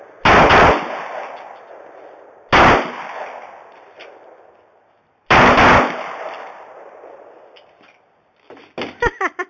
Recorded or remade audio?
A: recorded